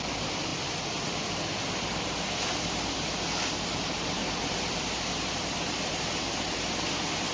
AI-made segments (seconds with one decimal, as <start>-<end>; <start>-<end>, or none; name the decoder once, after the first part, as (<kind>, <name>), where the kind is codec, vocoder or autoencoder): 0.0-7.3 (vocoder, BigVGAN v2)